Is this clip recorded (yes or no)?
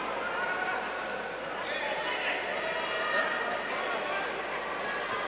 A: yes